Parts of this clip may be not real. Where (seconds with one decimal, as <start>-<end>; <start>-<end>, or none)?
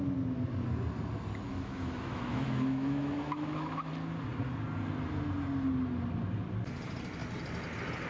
1.5-3.9